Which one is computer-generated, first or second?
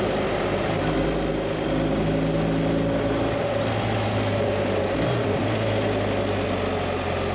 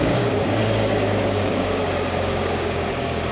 second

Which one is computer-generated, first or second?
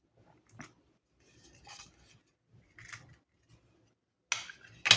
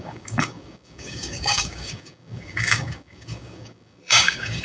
second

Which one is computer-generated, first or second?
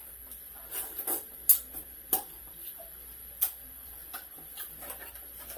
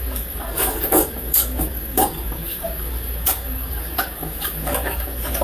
second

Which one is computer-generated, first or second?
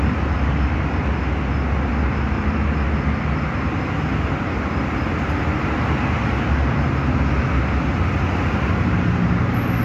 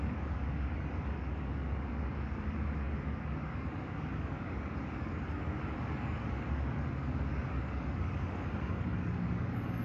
second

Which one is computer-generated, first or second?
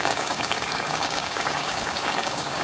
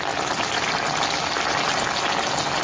first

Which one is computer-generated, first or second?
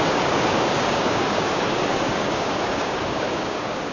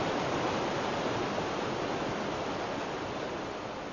first